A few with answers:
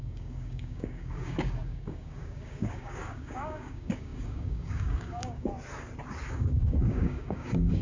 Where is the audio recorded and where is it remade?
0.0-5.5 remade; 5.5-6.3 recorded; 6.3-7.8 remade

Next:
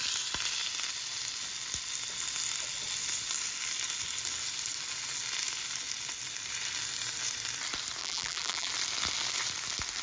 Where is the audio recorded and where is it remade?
0.0-8.0 recorded; 8.0-8.7 remade; 8.7-10.0 recorded

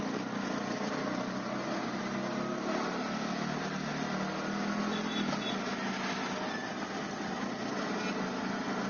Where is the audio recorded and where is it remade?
0.0-8.9 recorded

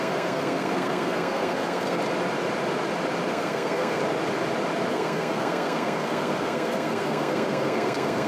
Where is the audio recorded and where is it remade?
0.0-2.0 remade; 2.0-3.3 recorded; 3.3-4.0 remade; 4.0-4.9 recorded; 4.9-8.3 remade

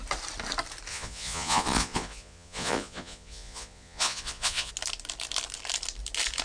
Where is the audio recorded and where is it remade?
0.0-0.9 recorded; 0.9-4.7 remade; 4.7-6.4 recorded

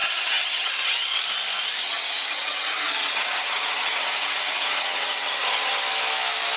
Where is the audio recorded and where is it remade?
0.0-0.7 remade; 0.7-1.8 recorded; 1.8-5.8 remade; 5.8-6.6 recorded

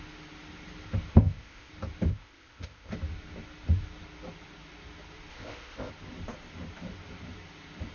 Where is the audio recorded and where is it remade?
0.0-1.1 recorded; 1.1-1.7 remade; 1.7-2.1 recorded; 2.1-2.9 remade; 2.9-5.3 recorded; 5.3-5.9 remade; 5.9-7.9 recorded